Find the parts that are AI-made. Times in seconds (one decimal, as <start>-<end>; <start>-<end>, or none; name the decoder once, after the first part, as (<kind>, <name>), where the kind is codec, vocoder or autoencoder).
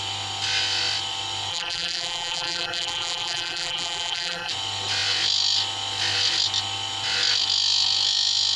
1.5-4.5 (vocoder, BigVGAN v2)